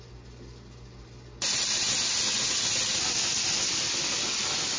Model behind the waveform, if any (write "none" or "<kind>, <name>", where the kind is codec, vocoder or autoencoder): none